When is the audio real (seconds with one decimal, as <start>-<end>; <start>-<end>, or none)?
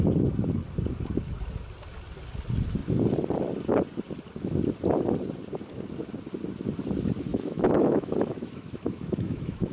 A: 0.0-7.3